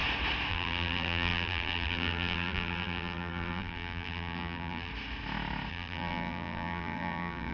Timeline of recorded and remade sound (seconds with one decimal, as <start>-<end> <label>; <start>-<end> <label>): 0.0-0.5 recorded; 0.5-4.9 remade; 4.9-5.7 recorded; 5.7-7.5 remade